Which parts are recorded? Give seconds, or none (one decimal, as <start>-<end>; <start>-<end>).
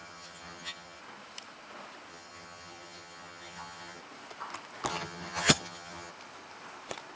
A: 1.0-2.1; 4.0-4.9; 6.1-7.2